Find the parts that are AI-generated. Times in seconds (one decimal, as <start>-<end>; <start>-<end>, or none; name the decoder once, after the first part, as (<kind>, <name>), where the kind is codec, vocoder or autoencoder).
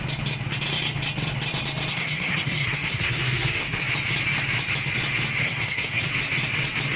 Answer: 1.9-3.8 (codec, SNAC); 5.4-6.1